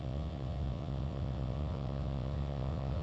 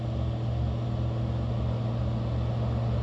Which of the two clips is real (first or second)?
second